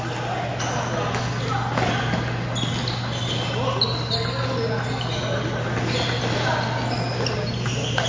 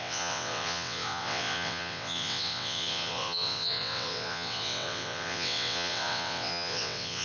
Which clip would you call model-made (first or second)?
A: second